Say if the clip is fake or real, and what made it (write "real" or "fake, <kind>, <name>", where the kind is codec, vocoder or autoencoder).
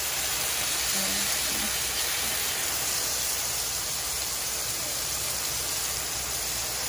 fake, vocoder, BigVGAN v2